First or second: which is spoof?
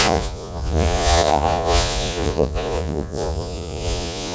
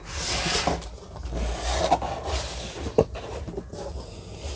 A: first